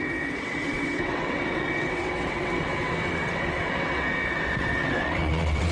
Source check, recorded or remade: remade